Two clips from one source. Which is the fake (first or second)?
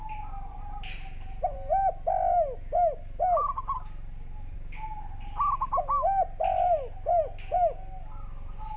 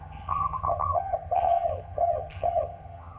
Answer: second